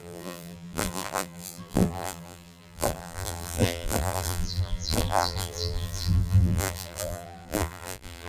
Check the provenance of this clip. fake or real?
fake